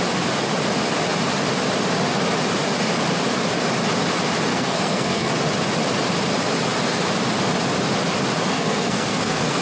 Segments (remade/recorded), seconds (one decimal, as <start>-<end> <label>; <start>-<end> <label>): 0.0-4.5 recorded; 4.5-5.3 remade; 5.3-8.5 recorded; 8.5-9.6 remade

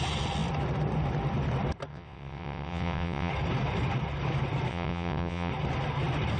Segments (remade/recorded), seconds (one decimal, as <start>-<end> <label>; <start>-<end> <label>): 0.0-1.9 recorded; 1.9-3.3 remade; 3.3-4.7 recorded; 4.7-5.5 remade; 5.5-6.4 recorded

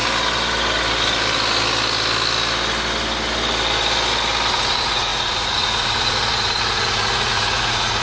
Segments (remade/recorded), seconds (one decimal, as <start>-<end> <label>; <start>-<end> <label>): 0.0-4.5 recorded; 4.5-8.0 remade

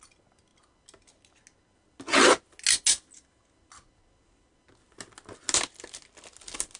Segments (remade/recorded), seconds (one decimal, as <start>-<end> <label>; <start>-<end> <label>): 0.0-6.8 recorded

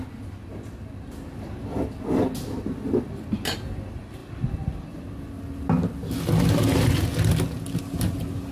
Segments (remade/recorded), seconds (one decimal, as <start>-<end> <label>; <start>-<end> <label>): 0.0-8.5 recorded

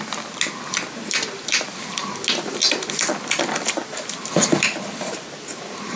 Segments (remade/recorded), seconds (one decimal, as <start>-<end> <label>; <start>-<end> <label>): 0.0-6.0 recorded